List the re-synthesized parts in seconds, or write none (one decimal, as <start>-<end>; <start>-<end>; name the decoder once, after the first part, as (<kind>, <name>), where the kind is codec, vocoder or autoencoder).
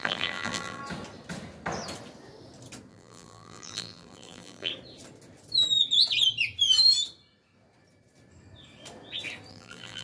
0.0-0.8 (vocoder, BigVGAN v2); 2.9-4.7; 9.5-10.0